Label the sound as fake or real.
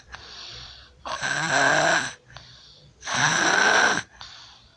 fake